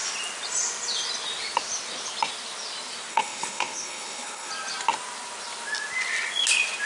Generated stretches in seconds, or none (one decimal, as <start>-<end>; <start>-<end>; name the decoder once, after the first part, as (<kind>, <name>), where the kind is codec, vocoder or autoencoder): 3.1-4.5 (codec, HILCodec)

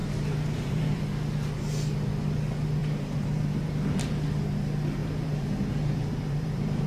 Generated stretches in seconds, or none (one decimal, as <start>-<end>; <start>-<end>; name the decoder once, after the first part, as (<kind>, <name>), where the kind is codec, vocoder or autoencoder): 0.0-1.0 (vocoder, BigVGAN v2); 2.8-3.7; 5.0-6.9

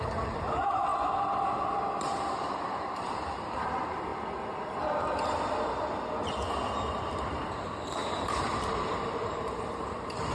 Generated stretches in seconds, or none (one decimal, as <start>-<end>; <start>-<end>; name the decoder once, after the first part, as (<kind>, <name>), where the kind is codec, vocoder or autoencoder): 0.0-0.9 (vocoder, BigVGAN v2); 2.5-4.1; 7.5-10.3

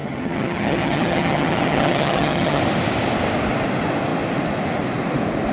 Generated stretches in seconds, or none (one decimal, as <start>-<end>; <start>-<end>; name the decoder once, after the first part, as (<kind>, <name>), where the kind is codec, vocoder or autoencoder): 0.0-2.6 (vocoder, HiFi-GAN)

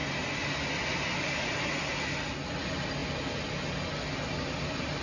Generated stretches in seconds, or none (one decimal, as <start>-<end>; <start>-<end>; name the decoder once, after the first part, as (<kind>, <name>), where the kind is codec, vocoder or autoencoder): none

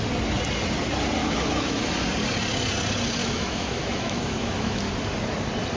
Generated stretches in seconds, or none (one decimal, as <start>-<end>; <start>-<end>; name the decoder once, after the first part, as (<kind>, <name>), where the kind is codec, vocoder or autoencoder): 1.2-1.9 (autoencoder, DAC-VAE); 3.2-4.9